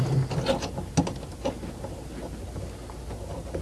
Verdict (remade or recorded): recorded